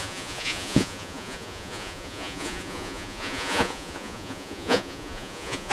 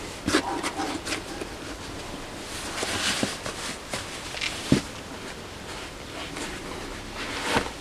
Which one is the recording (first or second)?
second